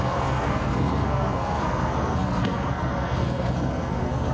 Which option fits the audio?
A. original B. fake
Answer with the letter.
B